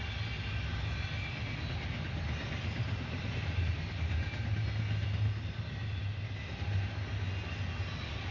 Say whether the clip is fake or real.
real